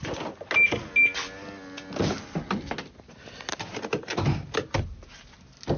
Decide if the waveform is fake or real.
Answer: real